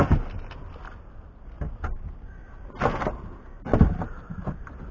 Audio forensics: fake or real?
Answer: real